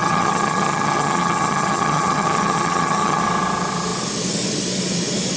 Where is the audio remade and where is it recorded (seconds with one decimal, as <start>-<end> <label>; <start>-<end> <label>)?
0.0-3.2 remade; 3.2-5.4 recorded